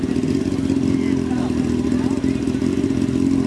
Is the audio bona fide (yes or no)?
yes